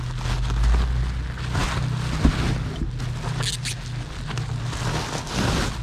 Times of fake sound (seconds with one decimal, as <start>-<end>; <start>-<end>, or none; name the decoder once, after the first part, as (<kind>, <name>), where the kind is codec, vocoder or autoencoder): none

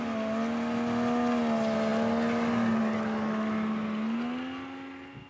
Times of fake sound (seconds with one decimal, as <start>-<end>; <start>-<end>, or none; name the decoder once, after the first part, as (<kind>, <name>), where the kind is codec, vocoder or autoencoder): none

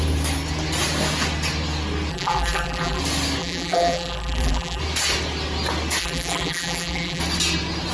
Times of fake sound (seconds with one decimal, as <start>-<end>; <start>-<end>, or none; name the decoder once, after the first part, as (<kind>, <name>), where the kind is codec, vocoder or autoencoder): 2.1-3.0 (vocoder, BigVGAN v2); 3.4-4.8; 6.0-7.2

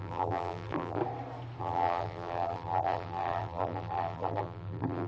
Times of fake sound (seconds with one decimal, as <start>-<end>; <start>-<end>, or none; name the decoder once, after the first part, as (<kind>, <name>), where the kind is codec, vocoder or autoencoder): 0.0-1.0 (vocoder, BigVGAN v2); 1.6-5.1

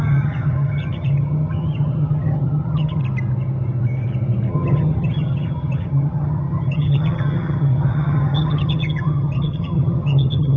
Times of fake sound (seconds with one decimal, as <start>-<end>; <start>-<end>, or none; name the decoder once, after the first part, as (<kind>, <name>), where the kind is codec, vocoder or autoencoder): 0.0-3.0 (vocoder, HiFi-GAN); 4.5-10.6

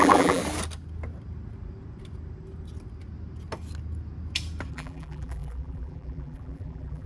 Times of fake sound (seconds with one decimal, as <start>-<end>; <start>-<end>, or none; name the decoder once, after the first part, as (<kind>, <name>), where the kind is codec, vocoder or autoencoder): 0.0-0.4 (vocoder, BigVGAN v2); 4.7-7.1